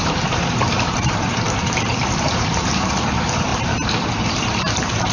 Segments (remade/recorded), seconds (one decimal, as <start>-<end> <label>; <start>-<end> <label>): 0.0-5.1 remade